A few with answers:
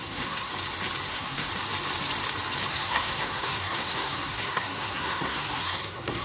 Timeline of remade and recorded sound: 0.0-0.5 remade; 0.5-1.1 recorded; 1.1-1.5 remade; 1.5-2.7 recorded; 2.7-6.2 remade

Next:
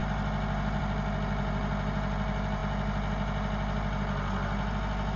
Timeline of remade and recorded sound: 0.0-5.2 recorded

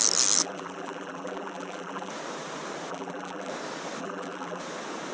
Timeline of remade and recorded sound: 0.0-0.4 recorded; 0.4-2.1 remade; 2.1-2.9 recorded; 2.9-3.5 remade; 3.5-4.0 recorded; 4.0-4.6 remade; 4.6-5.1 recorded

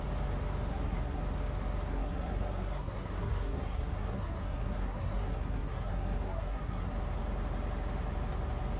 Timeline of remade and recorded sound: 0.0-0.7 recorded; 0.7-1.2 remade; 1.2-1.9 recorded; 1.9-6.9 remade; 6.9-8.8 recorded